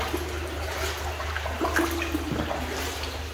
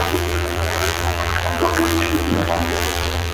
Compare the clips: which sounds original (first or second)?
first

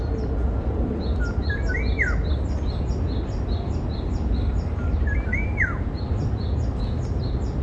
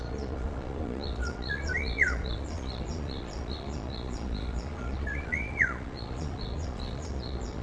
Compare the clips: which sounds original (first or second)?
first